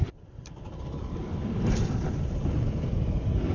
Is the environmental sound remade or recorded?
recorded